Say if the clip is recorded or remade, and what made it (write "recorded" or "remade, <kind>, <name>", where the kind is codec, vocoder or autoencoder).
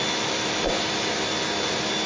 recorded